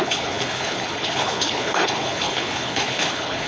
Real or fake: fake